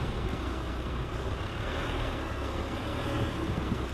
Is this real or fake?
fake